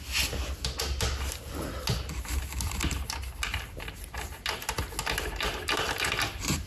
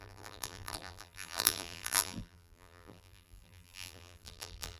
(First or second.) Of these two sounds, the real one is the first